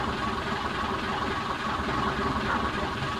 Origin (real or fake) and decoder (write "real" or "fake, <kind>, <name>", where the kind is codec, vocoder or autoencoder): real